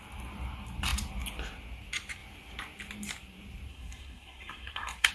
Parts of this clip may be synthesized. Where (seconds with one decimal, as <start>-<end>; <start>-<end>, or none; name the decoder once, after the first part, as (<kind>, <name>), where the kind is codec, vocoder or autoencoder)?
3.7-5.1 (codec, SNAC)